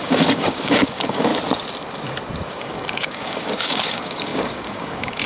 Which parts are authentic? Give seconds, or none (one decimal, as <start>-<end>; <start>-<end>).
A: 1.3-2.5